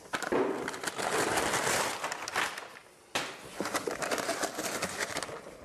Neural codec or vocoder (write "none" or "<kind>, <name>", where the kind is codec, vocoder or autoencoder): none